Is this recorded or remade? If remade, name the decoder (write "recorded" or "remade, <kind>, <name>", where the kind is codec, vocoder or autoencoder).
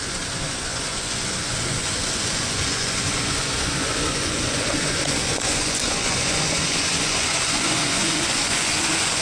remade, vocoder, Vocos